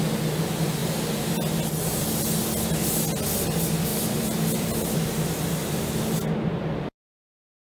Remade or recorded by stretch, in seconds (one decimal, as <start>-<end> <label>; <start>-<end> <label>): 0.0-3.9 recorded; 3.9-5.7 remade; 5.7-6.5 recorded; 6.5-7.2 remade; 7.2-7.8 recorded

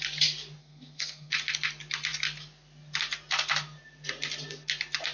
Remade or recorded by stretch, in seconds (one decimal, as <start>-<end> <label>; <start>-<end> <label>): 0.0-0.6 recorded; 0.6-1.3 remade; 1.3-5.1 recorded

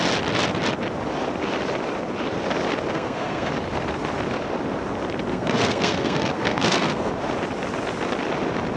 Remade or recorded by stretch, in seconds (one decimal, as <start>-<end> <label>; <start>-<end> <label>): 0.0-2.9 recorded; 2.9-3.5 remade; 3.5-5.3 recorded; 5.3-7.1 remade; 7.1-8.8 recorded

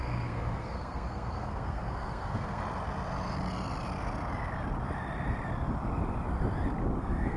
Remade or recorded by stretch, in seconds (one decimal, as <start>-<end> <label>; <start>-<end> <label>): 0.0-2.6 remade; 2.6-7.0 recorded; 7.0-7.4 remade

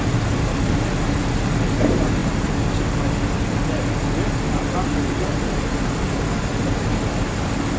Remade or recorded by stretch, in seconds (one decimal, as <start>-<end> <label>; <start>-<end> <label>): 0.0-7.8 recorded

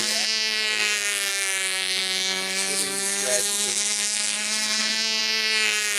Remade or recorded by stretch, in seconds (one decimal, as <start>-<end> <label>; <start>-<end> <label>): 0.0-0.8 remade; 0.8-1.3 recorded; 1.3-5.2 remade; 5.2-6.0 recorded

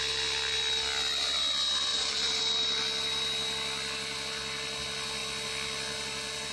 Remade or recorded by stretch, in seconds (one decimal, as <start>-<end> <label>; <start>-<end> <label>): 0.0-1.9 recorded; 1.9-2.4 remade; 2.4-6.5 recorded